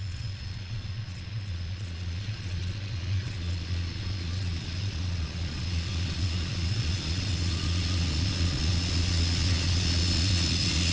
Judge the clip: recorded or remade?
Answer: remade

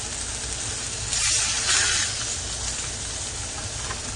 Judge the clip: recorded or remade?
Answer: recorded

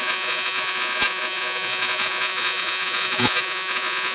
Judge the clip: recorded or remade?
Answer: remade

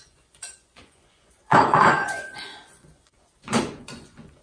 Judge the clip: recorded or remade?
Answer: remade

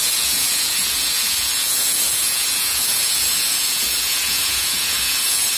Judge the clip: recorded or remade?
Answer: remade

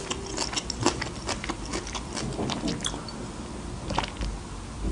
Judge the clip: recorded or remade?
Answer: recorded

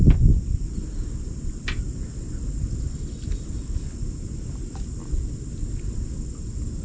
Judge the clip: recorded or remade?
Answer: recorded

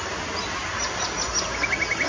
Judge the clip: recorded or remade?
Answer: recorded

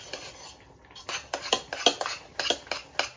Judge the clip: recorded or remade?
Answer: recorded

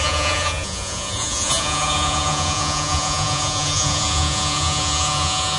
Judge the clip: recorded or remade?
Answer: remade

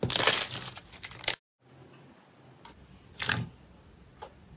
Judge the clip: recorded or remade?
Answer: recorded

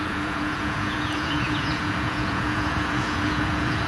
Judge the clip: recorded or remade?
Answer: remade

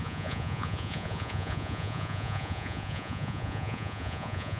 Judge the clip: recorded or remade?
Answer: remade